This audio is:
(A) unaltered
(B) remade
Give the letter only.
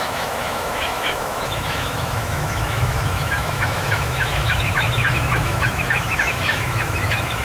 B